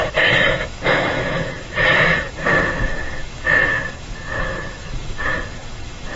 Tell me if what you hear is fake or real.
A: fake